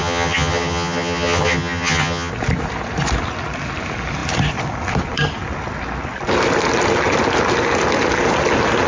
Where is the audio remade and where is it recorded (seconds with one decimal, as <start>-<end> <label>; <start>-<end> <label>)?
0.0-2.3 remade; 2.3-8.9 recorded